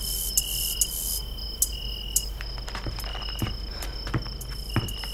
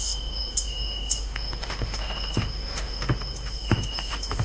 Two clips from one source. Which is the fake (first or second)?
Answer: second